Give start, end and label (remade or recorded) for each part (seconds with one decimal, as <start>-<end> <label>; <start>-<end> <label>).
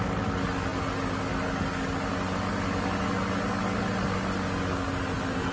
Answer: 0.0-5.5 recorded